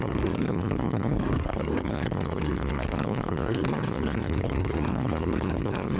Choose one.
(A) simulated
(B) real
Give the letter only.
A